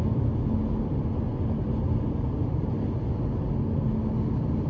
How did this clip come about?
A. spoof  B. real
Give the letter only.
B